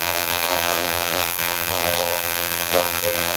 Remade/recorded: remade